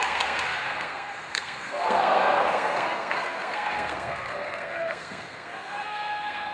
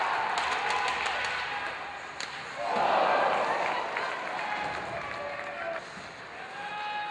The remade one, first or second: first